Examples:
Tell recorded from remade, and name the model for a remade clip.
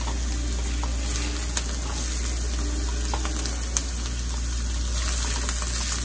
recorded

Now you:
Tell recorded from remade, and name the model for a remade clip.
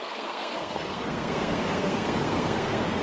remade, codec, SNAC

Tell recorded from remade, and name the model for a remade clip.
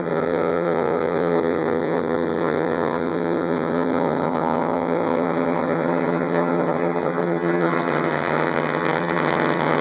remade, vocoder, HiFi-GAN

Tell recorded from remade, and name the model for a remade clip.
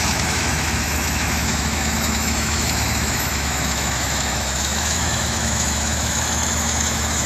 remade, autoencoder, DAC-VAE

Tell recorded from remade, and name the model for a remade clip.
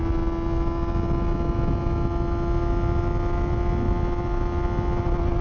recorded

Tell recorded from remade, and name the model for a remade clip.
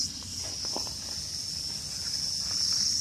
recorded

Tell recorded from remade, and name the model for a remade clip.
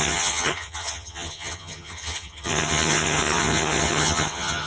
remade, vocoder, HiFi-GAN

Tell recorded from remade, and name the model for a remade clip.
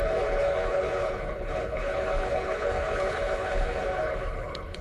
remade, codec, HILCodec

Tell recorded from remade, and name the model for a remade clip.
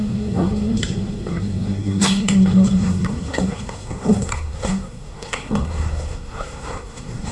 remade, codec, SNAC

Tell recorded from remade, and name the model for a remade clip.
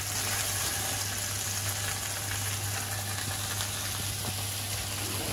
recorded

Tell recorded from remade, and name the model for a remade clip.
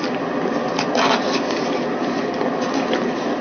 recorded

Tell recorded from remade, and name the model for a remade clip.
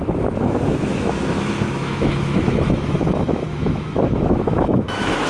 remade, autoencoder, DAC-VAE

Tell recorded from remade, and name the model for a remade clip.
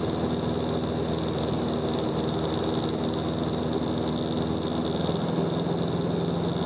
recorded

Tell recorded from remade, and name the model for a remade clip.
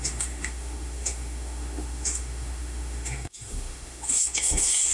remade, autoencoder, DAC-VAE